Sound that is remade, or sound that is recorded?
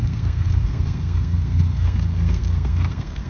remade